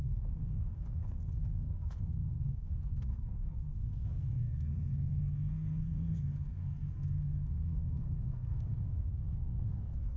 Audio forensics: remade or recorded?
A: remade